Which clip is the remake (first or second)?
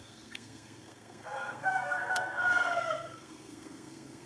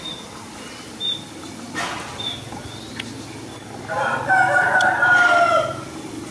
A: first